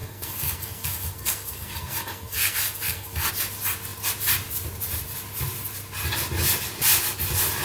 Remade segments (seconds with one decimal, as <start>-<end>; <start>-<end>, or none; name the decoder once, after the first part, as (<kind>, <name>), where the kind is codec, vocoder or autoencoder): 0.0-3.3 (codec, SNAC)